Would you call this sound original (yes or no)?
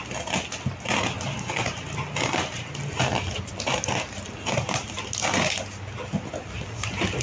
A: yes